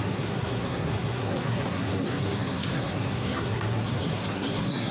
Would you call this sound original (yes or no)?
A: no